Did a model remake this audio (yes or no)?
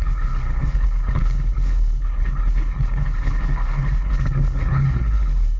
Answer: yes